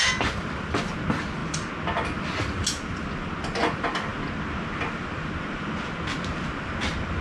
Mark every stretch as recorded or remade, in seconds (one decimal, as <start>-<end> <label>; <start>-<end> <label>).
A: 0.0-7.2 recorded